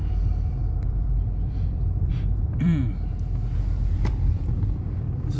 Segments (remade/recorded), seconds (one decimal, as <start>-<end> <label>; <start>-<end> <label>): 0.0-2.8 remade; 2.8-3.8 recorded; 3.8-5.4 remade

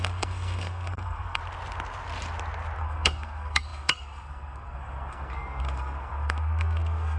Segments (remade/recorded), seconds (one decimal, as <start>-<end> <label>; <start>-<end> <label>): 0.0-1.4 remade; 1.4-2.8 recorded; 2.8-7.2 remade